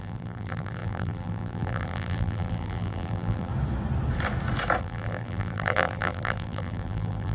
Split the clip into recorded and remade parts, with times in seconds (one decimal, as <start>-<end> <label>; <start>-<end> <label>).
0.0-3.5 remade; 3.5-4.8 recorded; 4.8-7.3 remade